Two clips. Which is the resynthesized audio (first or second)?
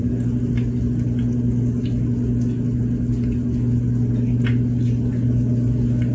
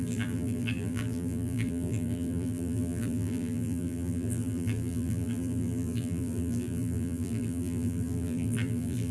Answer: second